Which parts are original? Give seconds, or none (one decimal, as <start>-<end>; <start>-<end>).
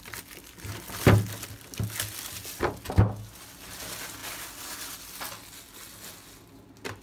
0.0-7.0